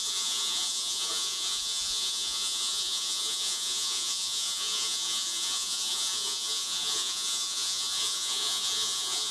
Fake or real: fake